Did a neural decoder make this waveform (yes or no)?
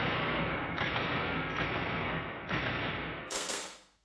yes